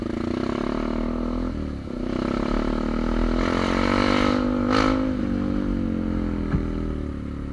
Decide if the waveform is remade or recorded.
recorded